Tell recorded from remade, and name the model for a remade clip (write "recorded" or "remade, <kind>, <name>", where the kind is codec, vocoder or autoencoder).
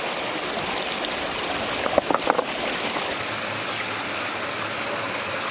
recorded